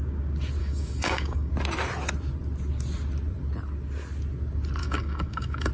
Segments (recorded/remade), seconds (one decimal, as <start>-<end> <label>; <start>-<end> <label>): 0.0-0.6 recorded; 0.6-1.5 remade; 1.5-4.8 recorded; 4.8-5.7 remade